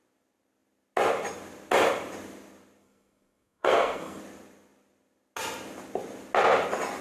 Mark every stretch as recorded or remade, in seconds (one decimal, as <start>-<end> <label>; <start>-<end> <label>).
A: 0.0-2.8 recorded; 2.8-4.2 remade; 4.2-7.0 recorded

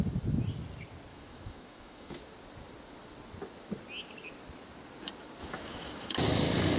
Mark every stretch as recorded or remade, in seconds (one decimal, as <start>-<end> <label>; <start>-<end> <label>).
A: 0.0-1.1 recorded; 1.1-2.3 remade; 2.3-5.4 recorded; 5.4-6.1 remade; 6.1-6.8 recorded

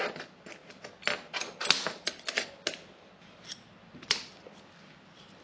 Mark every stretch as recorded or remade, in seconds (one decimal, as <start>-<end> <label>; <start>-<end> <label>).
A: 0.0-5.4 recorded

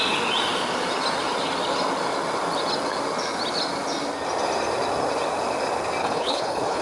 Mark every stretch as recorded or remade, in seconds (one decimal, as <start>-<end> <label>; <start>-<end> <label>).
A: 0.0-6.0 recorded; 6.0-6.8 remade

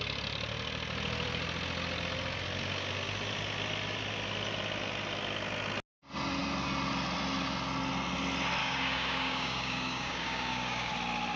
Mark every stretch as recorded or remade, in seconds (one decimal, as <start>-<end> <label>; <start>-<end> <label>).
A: 0.0-8.6 recorded; 8.6-10.9 remade; 10.9-11.4 recorded

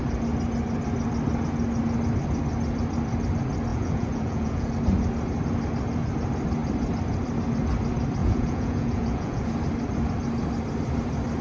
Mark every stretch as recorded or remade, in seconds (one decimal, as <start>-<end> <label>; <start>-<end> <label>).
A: 0.0-3.7 recorded; 3.7-4.7 remade; 4.7-8.2 recorded; 8.2-9.5 remade; 9.5-11.4 recorded

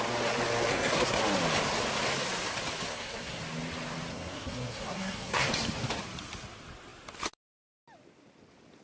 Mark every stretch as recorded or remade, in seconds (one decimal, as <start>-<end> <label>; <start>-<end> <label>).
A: 0.0-0.7 recorded; 0.7-1.2 remade; 1.2-2.9 recorded; 2.9-3.4 remade; 3.4-4.1 recorded; 4.1-5.5 remade; 5.5-8.8 recorded

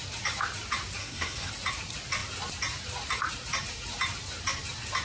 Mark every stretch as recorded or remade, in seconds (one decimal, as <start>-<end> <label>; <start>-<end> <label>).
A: 0.0-1.0 recorded; 1.0-1.5 remade; 1.5-5.0 recorded